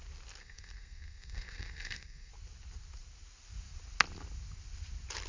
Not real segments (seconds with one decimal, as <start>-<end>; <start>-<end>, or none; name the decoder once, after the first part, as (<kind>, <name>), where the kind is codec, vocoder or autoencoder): 0.4-2.3 (codec, SNAC)